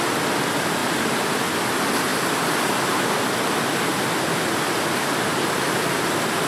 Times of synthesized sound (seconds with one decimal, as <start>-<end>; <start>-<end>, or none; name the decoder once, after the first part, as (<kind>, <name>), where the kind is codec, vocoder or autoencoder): none